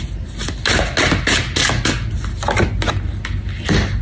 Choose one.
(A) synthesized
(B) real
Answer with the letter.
B